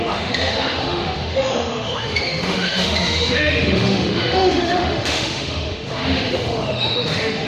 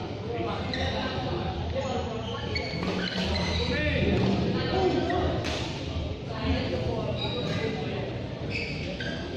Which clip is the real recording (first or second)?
second